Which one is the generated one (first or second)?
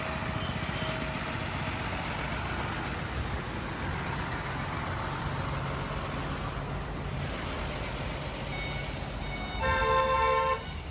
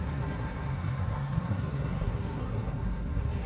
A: second